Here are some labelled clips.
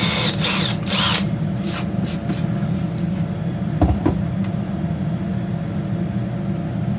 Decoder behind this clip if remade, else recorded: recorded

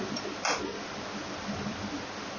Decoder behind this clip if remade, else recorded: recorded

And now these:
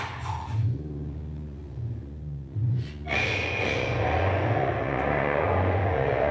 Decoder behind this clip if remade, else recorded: remade, vocoder, Vocos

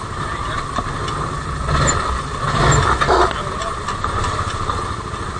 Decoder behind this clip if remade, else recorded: recorded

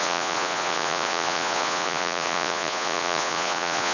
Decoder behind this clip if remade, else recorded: remade, vocoder, Vocos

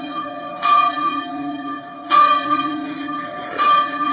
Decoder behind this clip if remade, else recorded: remade, vocoder, Vocos